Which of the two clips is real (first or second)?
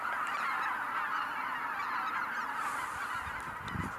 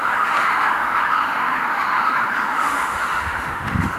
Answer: first